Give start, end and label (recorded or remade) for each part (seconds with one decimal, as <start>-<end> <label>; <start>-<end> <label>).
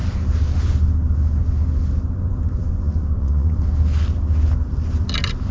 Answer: 0.0-2.6 recorded; 2.6-3.6 remade; 3.6-5.5 recorded